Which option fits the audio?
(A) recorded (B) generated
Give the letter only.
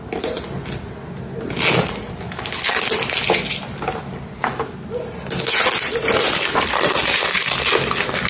A